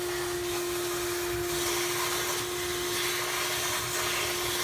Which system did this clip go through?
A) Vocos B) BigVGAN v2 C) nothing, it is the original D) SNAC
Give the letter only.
C